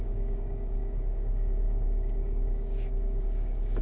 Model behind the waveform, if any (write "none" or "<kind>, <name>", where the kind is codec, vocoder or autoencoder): codec, DAC